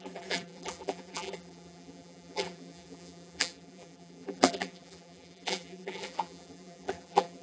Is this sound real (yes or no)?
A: no